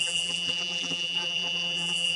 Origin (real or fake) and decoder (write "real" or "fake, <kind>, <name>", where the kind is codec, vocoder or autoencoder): fake, vocoder, BigVGAN v2